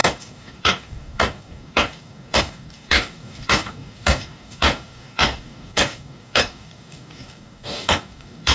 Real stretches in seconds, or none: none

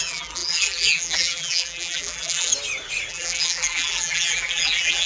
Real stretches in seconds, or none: 2.5-3.1

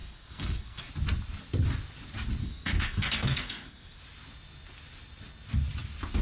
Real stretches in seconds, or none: 0.9-2.4; 4.0-6.2